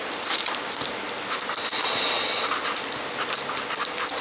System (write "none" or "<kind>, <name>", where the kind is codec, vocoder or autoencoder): none